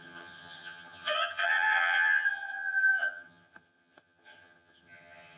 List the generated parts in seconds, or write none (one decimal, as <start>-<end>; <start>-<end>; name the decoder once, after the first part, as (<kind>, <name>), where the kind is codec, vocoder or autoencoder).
0.0-5.4 (vocoder, HiFi-GAN)